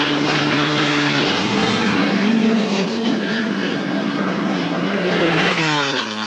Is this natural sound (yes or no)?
no